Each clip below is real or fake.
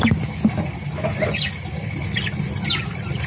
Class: real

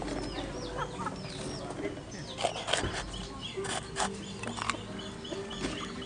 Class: real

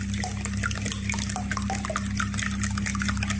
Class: real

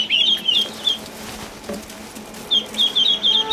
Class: real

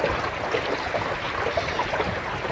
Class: real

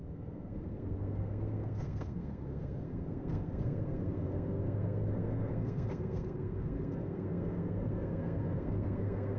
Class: fake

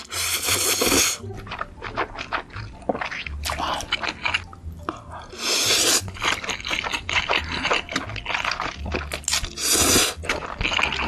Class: real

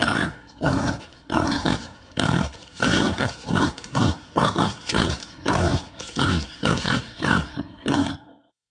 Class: fake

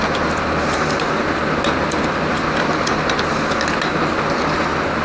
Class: real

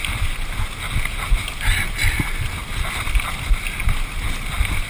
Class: real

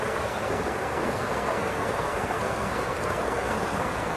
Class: fake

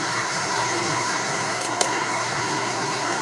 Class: fake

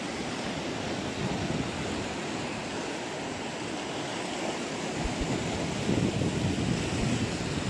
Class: real